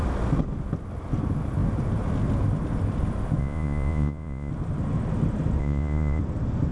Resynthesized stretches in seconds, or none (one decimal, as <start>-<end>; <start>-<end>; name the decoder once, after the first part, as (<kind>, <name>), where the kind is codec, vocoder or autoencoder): 3.4-4.5 (vocoder, Vocos); 5.6-6.2